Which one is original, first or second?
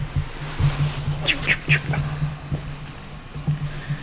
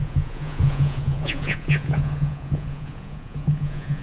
first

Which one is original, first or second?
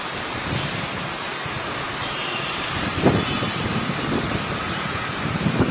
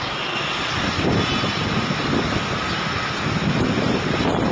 second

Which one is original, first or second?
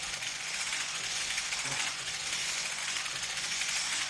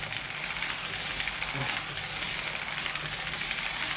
second